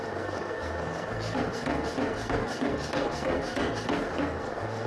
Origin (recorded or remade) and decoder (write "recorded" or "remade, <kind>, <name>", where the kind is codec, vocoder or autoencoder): remade, codec, SNAC